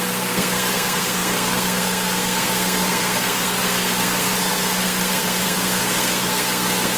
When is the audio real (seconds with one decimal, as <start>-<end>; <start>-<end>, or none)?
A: none